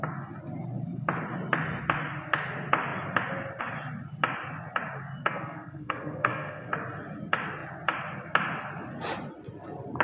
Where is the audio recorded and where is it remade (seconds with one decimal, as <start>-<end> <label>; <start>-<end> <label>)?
0.0-5.2 recorded; 5.2-6.7 remade; 6.7-10.0 recorded